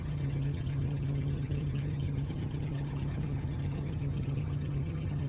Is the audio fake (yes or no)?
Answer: yes